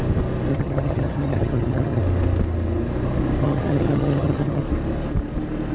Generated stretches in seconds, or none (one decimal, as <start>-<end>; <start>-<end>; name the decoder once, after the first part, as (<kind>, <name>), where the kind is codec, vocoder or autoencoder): 0.5-2.0 (vocoder, HiFi-GAN); 3.4-4.6